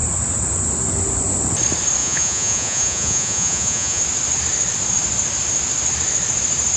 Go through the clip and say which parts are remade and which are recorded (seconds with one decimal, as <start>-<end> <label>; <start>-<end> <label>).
0.0-2.0 recorded; 2.0-4.0 remade; 4.0-6.8 recorded